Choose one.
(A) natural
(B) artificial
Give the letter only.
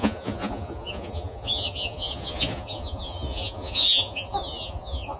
B